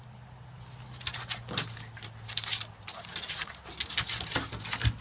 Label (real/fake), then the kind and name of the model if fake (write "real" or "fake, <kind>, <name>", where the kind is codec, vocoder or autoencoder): real